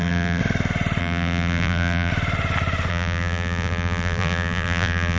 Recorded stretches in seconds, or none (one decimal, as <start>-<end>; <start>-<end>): 0.4-1.0; 2.1-2.9